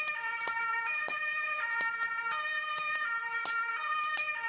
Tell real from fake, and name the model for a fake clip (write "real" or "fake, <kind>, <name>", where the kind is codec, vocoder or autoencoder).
fake, vocoder, BigVGAN v2